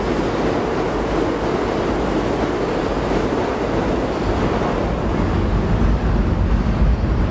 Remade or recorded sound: recorded